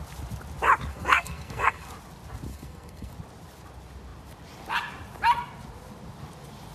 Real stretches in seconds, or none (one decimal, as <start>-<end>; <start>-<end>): 0.0-0.9; 1.9-2.5; 3.1-6.7